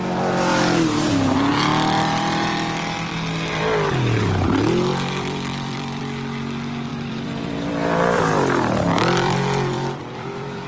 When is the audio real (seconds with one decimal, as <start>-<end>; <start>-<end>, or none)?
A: 0.0-4.9; 6.0-6.9